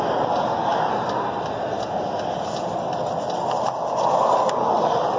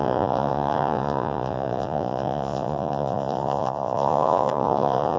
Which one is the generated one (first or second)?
second